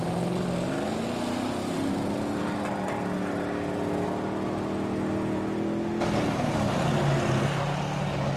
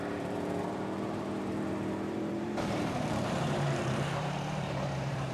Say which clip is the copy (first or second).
second